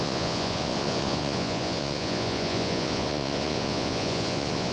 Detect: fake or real fake